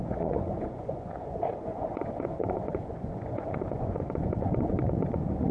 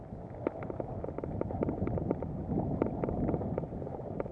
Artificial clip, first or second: first